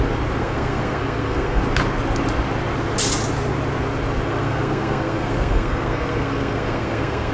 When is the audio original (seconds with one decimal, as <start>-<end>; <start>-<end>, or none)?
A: 0.0-0.4; 1.6-4.3